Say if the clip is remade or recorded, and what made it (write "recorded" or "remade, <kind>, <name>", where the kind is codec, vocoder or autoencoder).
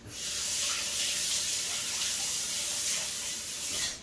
recorded